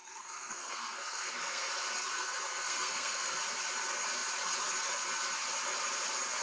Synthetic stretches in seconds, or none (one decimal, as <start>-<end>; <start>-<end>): 0.0-1.7; 2.1-3.4